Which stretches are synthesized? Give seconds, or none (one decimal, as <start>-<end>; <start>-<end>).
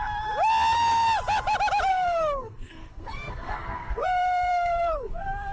1.9-5.5